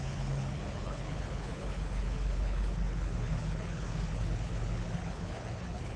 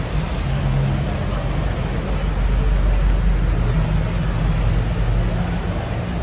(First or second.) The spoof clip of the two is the first